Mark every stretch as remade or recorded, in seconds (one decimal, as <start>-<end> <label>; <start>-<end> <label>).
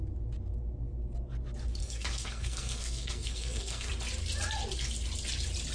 0.0-1.8 recorded; 1.8-3.9 remade; 3.9-5.7 recorded